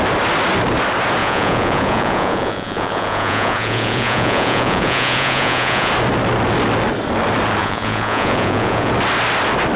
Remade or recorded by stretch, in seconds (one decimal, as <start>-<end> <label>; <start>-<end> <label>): 0.0-1.2 recorded; 1.2-5.9 remade; 5.9-7.6 recorded; 7.6-8.9 remade; 8.9-9.8 recorded